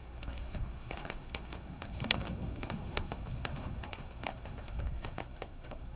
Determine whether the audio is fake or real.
fake